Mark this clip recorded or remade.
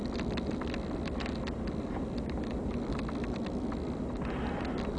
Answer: recorded